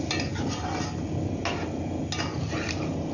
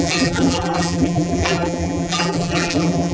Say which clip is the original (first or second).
first